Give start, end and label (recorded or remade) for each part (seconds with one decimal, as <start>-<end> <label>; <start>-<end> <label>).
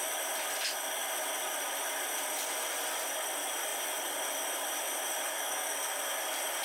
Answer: 0.0-5.3 recorded; 5.3-6.0 remade; 6.0-6.6 recorded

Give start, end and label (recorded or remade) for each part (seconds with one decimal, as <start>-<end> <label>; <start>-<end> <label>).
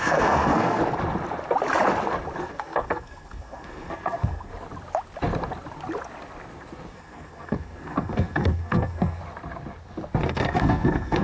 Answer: 0.0-0.8 remade; 0.8-2.4 recorded; 2.4-4.5 remade; 4.5-6.9 recorded; 6.9-9.2 remade; 9.2-10.3 recorded; 10.3-11.2 remade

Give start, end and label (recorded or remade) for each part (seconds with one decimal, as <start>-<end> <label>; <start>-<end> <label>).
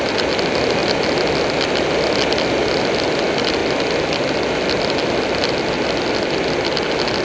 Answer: 0.0-7.2 recorded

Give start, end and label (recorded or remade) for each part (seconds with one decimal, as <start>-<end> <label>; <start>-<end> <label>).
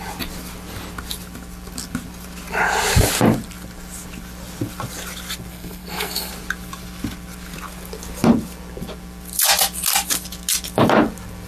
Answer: 0.0-5.5 recorded; 5.5-6.3 remade; 6.3-11.5 recorded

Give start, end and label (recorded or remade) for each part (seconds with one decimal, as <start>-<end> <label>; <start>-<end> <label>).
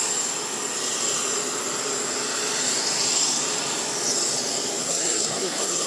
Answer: 0.0-4.8 recorded; 4.8-5.9 remade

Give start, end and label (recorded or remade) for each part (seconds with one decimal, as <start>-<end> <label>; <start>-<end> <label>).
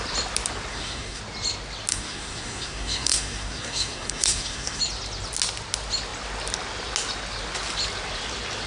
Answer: 0.0-0.7 recorded; 0.7-1.2 remade; 1.2-1.9 recorded; 1.9-4.8 remade; 4.8-8.7 recorded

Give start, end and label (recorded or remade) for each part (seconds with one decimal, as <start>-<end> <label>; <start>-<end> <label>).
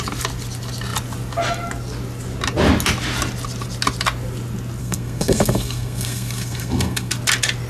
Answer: 0.0-4.8 recorded; 4.8-7.1 remade; 7.1-7.7 recorded